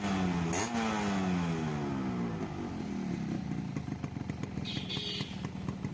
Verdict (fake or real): real